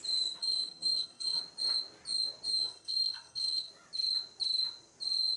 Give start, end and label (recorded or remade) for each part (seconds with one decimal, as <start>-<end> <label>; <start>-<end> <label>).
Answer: 0.0-0.4 recorded; 0.4-1.4 remade; 1.4-2.6 recorded; 2.6-3.7 remade; 3.7-5.4 recorded